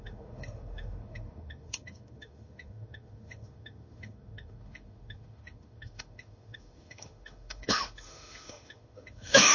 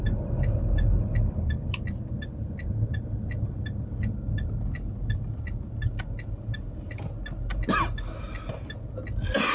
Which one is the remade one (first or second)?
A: first